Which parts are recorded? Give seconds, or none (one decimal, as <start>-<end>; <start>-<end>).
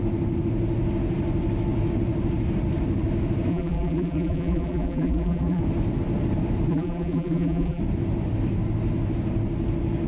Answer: 0.0-3.5; 5.6-6.7; 7.8-10.1